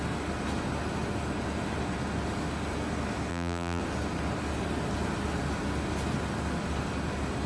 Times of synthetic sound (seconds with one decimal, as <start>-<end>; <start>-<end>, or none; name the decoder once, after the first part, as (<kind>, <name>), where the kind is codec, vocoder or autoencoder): 3.3-3.8 (vocoder, BigVGAN v2)